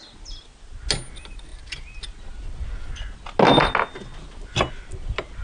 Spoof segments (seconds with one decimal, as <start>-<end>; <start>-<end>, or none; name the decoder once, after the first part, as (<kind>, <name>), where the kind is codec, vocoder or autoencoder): none